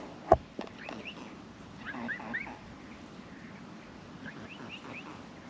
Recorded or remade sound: recorded